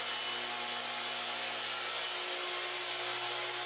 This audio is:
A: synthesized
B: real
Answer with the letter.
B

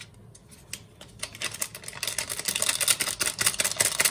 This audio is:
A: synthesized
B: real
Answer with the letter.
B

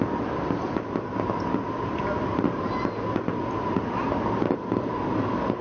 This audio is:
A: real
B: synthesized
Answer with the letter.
A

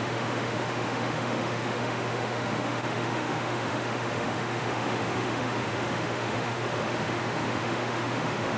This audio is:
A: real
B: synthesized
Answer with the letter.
B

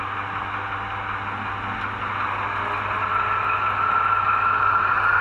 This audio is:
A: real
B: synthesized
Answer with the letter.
A